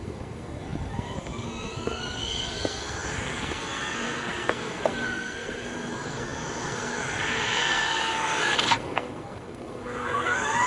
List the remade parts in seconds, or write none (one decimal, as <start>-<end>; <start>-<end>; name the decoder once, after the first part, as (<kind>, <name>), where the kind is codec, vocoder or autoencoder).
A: 0.0-10.7 (codec, SNAC)